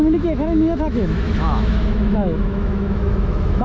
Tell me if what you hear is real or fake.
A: fake